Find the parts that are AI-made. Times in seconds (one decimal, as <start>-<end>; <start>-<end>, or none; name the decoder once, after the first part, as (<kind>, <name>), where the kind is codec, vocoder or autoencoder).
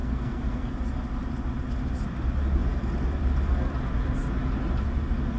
0.0-0.7 (codec, SNAC)